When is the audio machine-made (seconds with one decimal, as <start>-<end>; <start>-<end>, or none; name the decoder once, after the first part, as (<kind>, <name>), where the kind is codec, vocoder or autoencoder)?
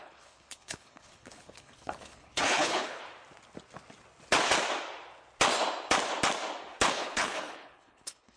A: 0.0-3.0 (codec, HILCodec); 6.9-8.4